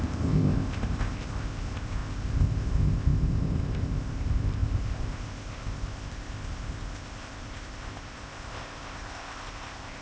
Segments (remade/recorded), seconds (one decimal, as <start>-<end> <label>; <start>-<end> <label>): 0.0-10.0 remade